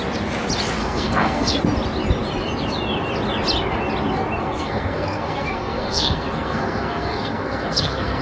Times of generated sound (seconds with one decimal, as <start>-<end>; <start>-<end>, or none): 0.8-1.6; 4.4-8.2